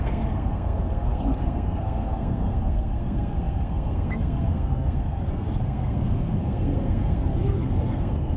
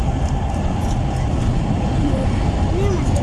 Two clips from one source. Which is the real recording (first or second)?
second